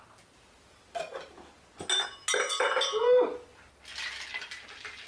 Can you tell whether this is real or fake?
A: real